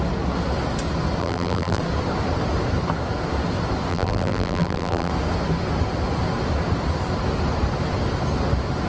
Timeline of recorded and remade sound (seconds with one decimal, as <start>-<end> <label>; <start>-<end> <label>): 0.0-1.2 recorded; 1.2-1.8 remade; 1.8-3.9 recorded; 3.9-5.1 remade; 5.1-8.9 recorded